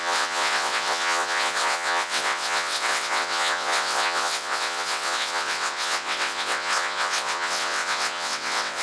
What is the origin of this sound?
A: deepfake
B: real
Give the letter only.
A